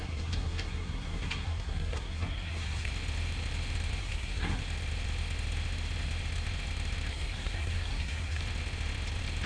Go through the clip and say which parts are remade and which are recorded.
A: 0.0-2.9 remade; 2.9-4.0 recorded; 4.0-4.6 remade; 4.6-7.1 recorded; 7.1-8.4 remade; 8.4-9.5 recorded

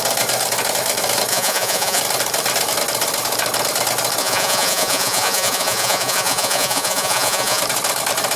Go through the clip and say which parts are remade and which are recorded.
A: 0.0-1.3 recorded; 1.3-2.0 remade; 2.0-4.2 recorded; 4.2-7.6 remade; 7.6-8.4 recorded

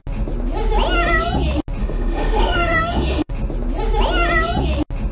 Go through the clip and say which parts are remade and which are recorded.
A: 0.0-1.8 recorded; 1.8-3.3 remade; 3.3-5.1 recorded

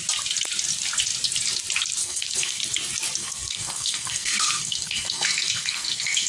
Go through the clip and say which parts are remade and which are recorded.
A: 0.0-2.0 recorded; 2.0-2.6 remade; 2.6-3.2 recorded; 3.2-6.3 remade

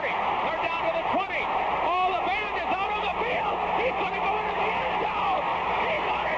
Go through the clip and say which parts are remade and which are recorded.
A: 0.0-0.6 recorded; 0.6-2.2 remade; 2.2-6.4 recorded

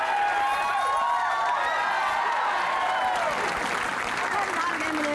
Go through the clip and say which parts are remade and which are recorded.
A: 0.0-5.1 recorded

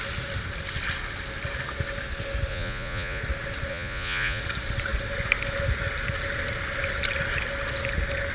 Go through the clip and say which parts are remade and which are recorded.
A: 0.0-2.5 recorded; 2.5-3.2 remade; 3.2-3.7 recorded; 3.7-4.4 remade; 4.4-8.3 recorded

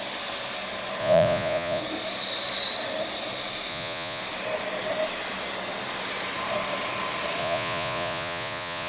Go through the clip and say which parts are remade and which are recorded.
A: 0.0-1.0 recorded; 1.0-1.8 remade; 1.8-3.7 recorded; 3.7-4.2 remade; 4.2-7.4 recorded; 7.4-8.9 remade